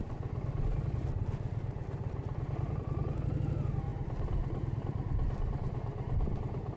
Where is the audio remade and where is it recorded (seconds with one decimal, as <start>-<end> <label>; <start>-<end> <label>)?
0.0-6.8 recorded